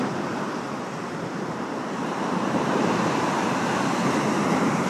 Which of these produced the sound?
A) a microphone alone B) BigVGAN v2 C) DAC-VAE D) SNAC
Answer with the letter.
B